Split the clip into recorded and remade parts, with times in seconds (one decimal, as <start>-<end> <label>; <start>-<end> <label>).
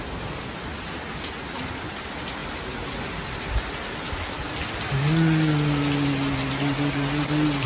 0.0-7.7 recorded